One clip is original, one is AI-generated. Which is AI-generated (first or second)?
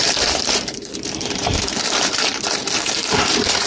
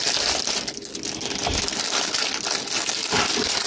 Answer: first